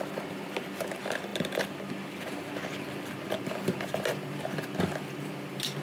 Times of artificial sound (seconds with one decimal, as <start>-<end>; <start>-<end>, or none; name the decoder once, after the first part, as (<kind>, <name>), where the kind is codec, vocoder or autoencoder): none